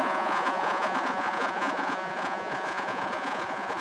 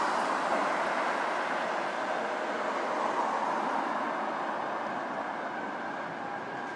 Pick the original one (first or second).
second